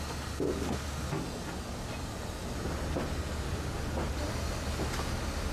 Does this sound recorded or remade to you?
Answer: recorded